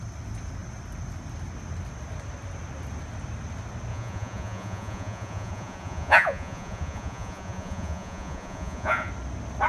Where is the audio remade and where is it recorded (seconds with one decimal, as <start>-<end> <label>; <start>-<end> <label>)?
0.0-3.9 recorded; 3.9-9.1 remade; 9.1-9.7 recorded